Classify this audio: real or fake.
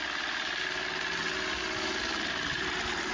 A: real